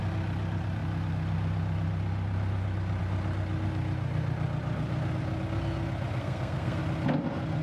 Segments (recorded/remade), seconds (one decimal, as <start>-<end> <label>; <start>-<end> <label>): 0.0-6.2 recorded; 6.2-6.8 remade; 6.8-7.6 recorded